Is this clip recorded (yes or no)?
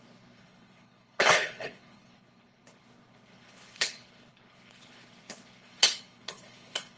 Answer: no